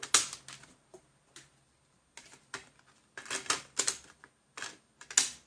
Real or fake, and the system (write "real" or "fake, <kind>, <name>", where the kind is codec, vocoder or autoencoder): real